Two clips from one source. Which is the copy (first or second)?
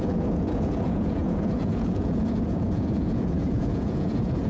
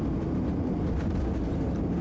first